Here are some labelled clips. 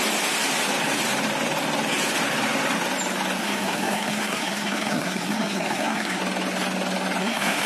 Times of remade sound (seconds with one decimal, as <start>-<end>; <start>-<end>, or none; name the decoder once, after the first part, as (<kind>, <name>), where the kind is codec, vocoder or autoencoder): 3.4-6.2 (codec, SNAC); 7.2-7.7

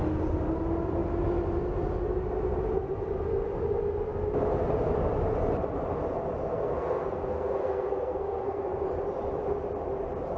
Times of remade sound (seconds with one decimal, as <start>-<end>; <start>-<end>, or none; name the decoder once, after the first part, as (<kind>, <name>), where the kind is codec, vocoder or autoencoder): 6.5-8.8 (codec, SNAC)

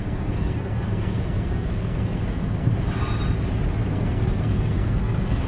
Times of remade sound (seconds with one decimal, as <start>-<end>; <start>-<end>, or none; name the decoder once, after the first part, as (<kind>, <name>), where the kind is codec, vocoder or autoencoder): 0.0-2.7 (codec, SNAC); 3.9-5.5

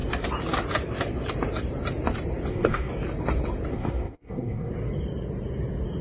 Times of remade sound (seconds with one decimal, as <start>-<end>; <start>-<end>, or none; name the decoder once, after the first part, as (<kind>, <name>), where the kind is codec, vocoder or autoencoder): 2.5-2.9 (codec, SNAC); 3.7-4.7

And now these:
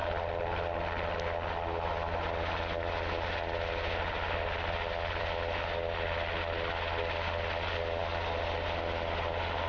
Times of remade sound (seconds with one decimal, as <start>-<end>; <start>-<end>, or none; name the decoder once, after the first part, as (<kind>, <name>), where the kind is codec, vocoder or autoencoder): none

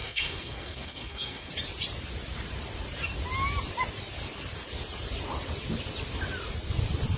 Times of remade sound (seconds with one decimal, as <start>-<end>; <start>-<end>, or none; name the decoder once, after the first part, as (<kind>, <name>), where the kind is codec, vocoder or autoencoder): 0.0-1.5 (codec, SNAC)